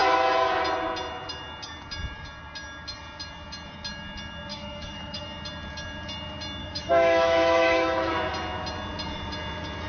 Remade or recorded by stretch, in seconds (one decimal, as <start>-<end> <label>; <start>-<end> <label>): 0.0-4.5 recorded; 4.5-5.2 remade; 5.2-6.6 recorded; 6.6-8.1 remade; 8.1-9.9 recorded